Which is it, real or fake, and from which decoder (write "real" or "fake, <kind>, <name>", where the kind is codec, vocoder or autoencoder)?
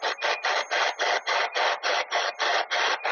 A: real